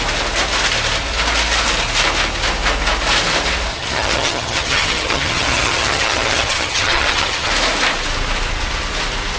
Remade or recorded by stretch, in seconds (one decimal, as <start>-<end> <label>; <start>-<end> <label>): 0.0-3.7 recorded; 3.7-7.5 remade; 7.5-9.4 recorded